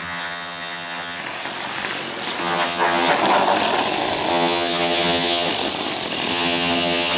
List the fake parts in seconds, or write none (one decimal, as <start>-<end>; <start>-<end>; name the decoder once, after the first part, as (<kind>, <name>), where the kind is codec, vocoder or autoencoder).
0.0-1.2 (vocoder, HiFi-GAN); 2.4-3.1; 4.3-5.5; 6.3-7.2